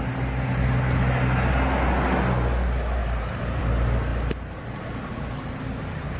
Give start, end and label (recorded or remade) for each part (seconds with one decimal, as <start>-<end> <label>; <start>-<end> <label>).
0.0-3.0 recorded; 3.0-3.6 remade; 3.6-6.2 recorded